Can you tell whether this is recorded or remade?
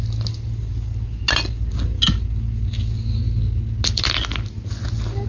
recorded